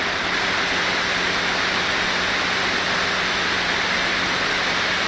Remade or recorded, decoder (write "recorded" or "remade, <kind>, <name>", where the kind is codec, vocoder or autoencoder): recorded